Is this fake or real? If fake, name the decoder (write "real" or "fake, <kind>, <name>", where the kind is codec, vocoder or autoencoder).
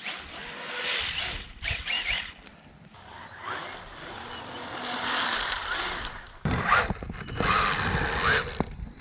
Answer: real